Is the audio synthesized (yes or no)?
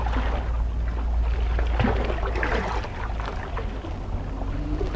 no